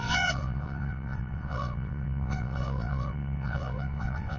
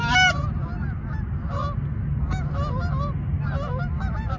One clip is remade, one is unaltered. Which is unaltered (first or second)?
second